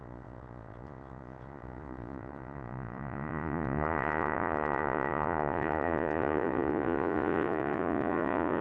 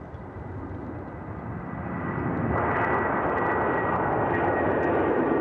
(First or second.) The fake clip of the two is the first